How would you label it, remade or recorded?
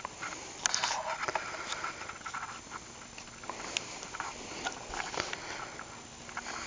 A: recorded